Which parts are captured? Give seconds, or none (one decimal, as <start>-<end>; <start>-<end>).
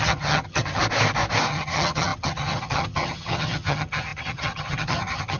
0.8-1.5